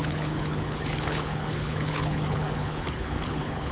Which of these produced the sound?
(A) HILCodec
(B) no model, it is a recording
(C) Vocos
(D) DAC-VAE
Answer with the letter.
A